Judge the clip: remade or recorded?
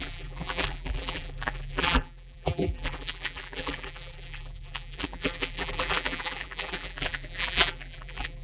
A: remade